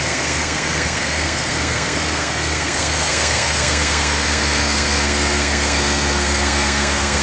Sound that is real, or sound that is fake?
fake